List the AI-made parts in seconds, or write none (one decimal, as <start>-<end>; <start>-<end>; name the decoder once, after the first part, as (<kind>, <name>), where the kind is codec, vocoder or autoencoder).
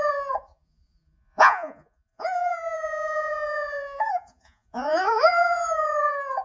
0.0-6.4 (vocoder, Vocos)